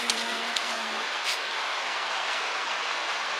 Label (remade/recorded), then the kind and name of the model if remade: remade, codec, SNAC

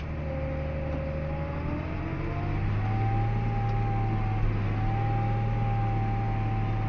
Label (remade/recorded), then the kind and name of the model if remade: recorded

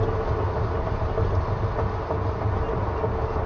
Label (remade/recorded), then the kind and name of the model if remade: recorded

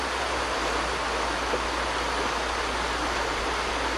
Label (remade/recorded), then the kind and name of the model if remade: recorded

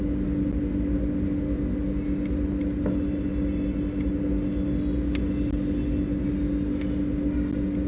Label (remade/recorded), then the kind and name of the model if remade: recorded